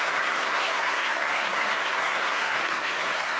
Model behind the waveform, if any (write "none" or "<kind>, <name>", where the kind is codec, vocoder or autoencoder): codec, SNAC